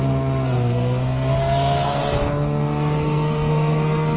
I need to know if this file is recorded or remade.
remade